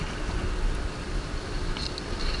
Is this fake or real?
real